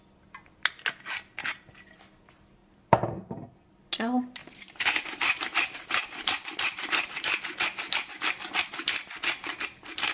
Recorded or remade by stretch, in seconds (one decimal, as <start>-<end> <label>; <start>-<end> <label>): 0.0-2.6 recorded; 2.6-3.7 remade; 3.7-4.4 recorded; 4.4-8.1 remade; 8.1-10.1 recorded